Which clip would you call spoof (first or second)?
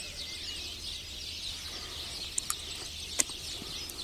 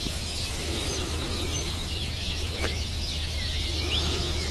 second